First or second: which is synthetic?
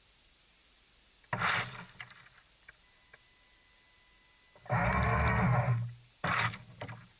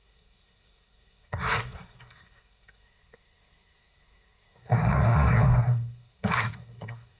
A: second